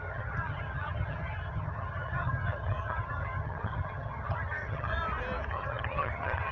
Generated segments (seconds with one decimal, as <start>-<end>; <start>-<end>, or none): 0.0-4.9; 5.5-6.5